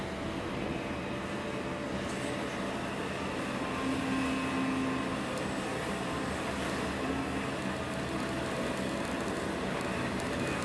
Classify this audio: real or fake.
real